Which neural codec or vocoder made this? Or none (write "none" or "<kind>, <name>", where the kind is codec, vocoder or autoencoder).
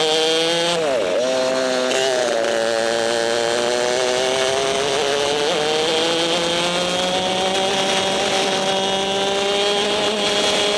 none